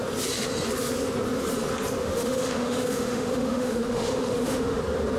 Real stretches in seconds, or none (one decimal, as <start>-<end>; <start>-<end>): 0.0-2.0; 4.8-5.2